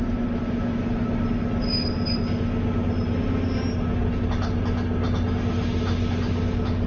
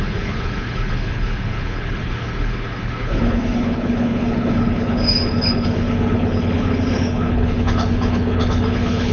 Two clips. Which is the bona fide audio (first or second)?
first